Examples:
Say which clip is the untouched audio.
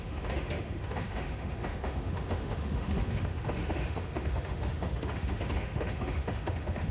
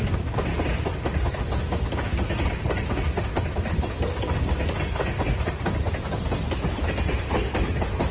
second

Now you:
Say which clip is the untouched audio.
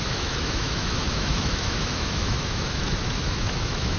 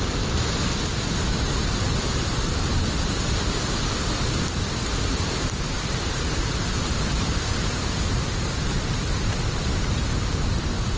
second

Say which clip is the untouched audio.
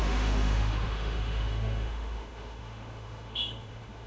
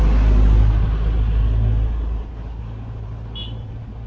second